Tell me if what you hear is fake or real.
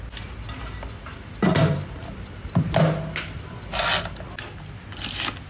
real